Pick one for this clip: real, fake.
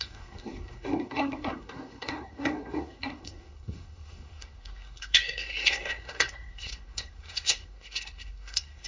fake